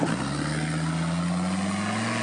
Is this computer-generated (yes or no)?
no